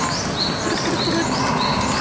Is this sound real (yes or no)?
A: yes